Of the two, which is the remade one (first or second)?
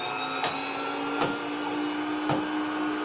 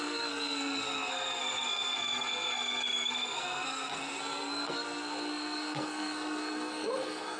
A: second